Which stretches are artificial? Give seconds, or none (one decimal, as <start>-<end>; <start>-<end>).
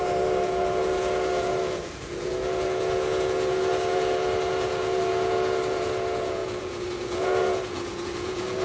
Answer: 0.0-8.6